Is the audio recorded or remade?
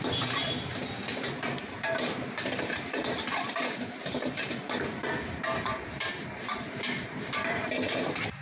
remade